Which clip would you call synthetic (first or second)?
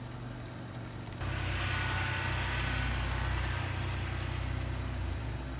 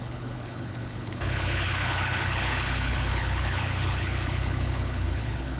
second